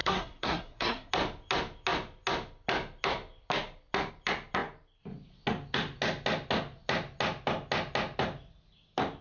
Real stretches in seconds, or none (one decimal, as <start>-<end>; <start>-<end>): 1.1-9.2